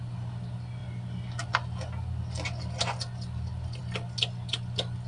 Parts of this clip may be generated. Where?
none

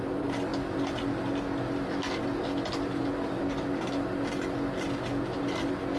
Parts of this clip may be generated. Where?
none